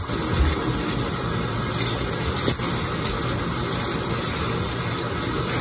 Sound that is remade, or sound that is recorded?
recorded